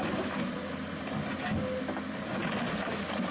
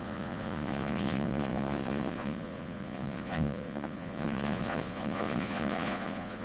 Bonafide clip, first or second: first